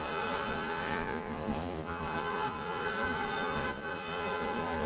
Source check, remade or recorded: remade